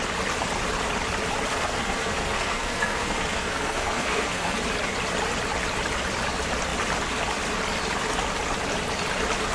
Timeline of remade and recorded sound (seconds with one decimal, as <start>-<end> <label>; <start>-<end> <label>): 0.0-1.5 recorded; 1.5-4.6 remade; 4.6-9.5 recorded